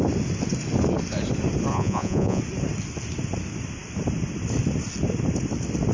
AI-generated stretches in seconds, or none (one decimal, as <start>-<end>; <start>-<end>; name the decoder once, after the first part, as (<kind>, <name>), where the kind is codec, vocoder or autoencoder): 1.7-2.4 (vocoder, Vocos)